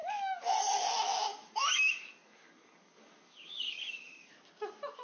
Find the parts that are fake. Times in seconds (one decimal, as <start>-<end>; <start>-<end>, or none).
0.0-0.8; 1.3-4.3